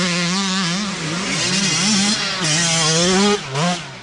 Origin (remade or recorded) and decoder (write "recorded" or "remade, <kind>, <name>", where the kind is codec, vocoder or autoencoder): recorded